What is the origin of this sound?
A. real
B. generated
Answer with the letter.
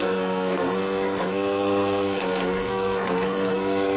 B